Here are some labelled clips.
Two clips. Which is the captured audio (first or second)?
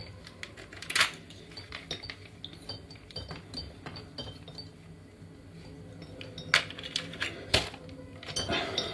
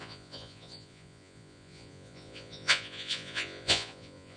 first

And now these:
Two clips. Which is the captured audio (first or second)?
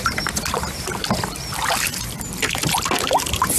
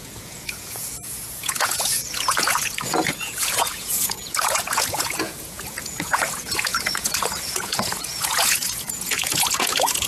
first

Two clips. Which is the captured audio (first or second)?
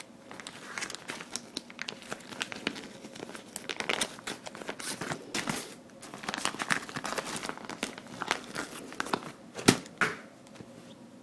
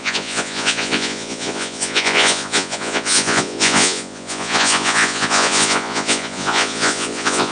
first